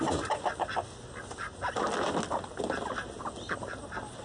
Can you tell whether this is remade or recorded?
recorded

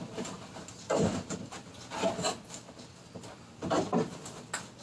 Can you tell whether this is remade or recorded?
recorded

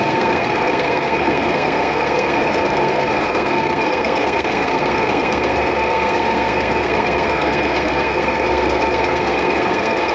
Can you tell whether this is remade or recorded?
remade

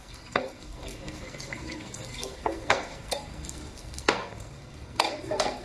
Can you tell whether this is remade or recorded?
remade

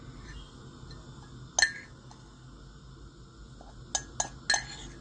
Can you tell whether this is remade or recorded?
recorded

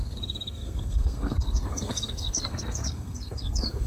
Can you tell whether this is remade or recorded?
remade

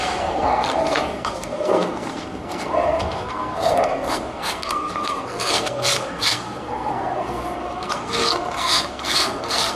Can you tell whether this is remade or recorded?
remade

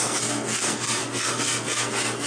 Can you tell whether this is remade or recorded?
remade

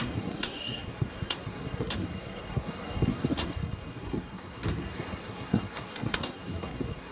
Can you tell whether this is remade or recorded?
remade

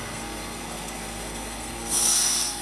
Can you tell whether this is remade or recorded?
remade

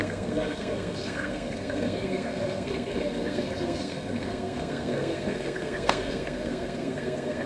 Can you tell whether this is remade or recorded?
remade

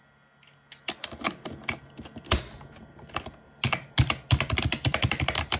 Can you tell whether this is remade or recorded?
recorded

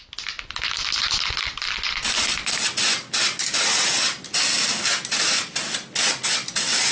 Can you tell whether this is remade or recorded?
recorded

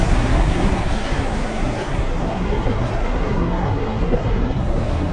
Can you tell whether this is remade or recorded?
remade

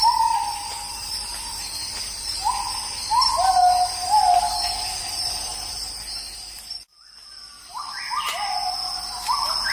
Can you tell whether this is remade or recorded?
recorded